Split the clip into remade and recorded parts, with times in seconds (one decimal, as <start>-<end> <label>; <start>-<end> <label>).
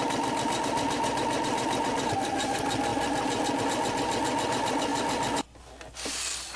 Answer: 0.0-6.6 recorded